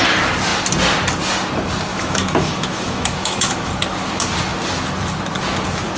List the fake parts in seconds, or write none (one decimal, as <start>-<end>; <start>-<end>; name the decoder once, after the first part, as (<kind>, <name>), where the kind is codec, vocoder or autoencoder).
1.9-3.7 (autoencoder, DAC-VAE)